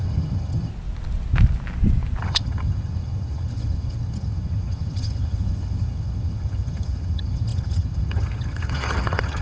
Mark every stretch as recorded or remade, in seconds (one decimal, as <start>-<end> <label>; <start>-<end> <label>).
0.0-0.7 remade; 0.7-2.2 recorded; 2.2-9.4 remade